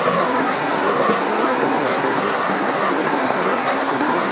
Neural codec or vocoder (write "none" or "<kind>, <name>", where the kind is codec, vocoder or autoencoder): codec, SNAC